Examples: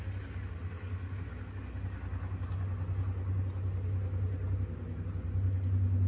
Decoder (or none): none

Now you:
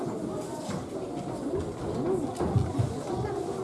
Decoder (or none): none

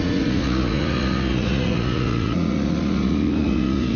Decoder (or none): vocoder, Vocos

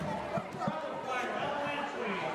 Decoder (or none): none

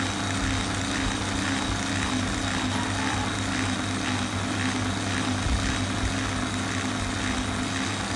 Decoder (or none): none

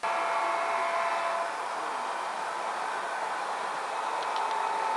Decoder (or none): none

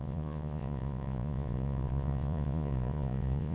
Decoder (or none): vocoder, Vocos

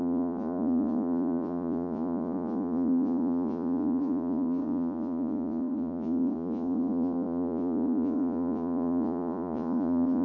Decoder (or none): vocoder, Vocos